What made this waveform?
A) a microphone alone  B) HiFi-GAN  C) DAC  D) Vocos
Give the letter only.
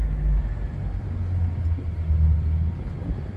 A